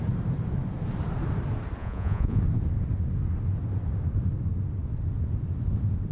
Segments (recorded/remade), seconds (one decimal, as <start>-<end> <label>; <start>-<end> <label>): 0.0-1.8 recorded; 1.8-2.4 remade; 2.4-6.1 recorded